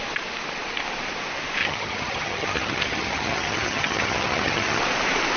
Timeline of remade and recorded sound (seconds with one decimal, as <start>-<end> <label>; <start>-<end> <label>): 0.0-1.6 recorded; 1.6-4.8 remade; 4.8-5.4 recorded